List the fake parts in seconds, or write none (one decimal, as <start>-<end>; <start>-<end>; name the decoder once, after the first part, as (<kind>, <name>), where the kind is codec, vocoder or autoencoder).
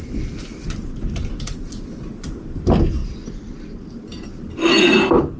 none